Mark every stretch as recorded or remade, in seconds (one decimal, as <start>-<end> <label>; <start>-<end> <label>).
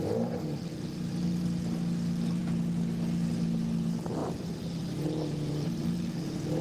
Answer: 0.0-4.2 recorded; 4.2-5.5 remade; 5.5-6.6 recorded